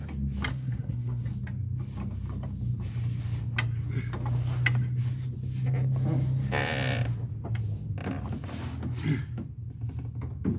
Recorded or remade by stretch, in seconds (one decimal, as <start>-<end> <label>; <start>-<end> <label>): 0.0-0.5 recorded; 0.5-1.3 remade; 1.3-10.6 recorded